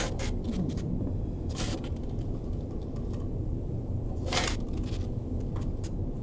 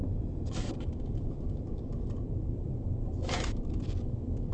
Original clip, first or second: first